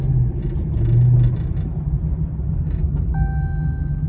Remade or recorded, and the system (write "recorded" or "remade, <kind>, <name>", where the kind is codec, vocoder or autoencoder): recorded